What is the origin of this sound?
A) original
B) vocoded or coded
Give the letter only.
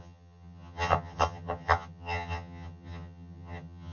B